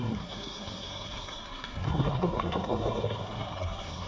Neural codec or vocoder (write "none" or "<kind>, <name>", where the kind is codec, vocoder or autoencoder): codec, SNAC